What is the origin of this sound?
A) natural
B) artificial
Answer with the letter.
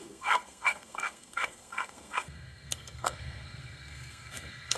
B